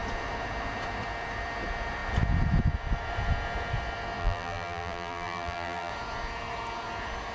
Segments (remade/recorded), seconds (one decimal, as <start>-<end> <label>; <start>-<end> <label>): 0.0-4.2 recorded; 4.2-5.9 remade; 5.9-7.3 recorded